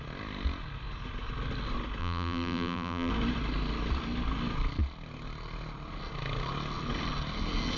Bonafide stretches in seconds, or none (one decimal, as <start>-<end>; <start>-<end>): 0.0-2.0; 3.1-7.8